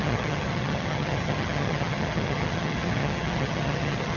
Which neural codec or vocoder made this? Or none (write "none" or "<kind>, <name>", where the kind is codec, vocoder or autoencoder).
vocoder, HiFi-GAN